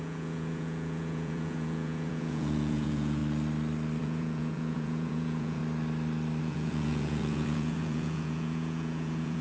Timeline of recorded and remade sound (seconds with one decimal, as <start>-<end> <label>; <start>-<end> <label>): 0.0-3.2 remade; 3.2-4.0 recorded; 4.0-5.6 remade; 5.6-6.4 recorded; 6.4-9.4 remade